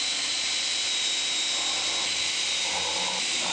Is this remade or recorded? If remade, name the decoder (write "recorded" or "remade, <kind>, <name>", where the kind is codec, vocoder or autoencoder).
recorded